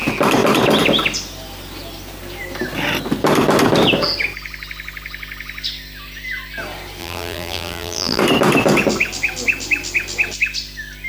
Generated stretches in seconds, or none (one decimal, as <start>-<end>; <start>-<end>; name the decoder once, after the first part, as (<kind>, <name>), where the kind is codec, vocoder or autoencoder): 7.0-8.2 (vocoder, BigVGAN v2)